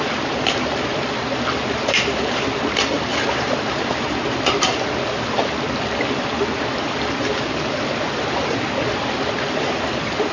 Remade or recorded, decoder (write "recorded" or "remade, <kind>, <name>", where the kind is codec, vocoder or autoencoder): recorded